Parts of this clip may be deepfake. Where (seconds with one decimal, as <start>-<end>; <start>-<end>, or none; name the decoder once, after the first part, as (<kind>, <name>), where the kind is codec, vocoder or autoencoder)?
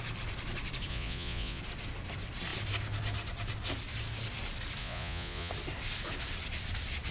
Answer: 0.9-1.6 (vocoder, Vocos); 4.8-5.5